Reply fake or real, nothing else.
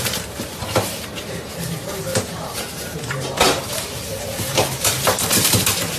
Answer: fake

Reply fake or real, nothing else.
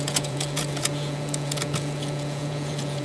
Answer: fake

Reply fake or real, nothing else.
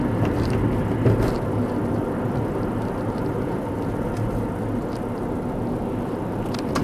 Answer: real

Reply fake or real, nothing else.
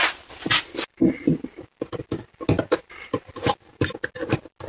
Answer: real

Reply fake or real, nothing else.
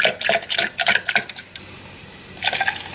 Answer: real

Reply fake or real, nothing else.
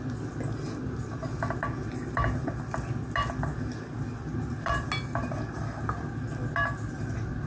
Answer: real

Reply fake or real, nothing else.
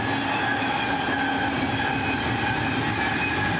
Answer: real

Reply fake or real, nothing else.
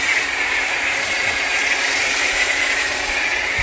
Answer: fake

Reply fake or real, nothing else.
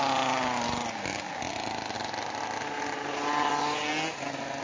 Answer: real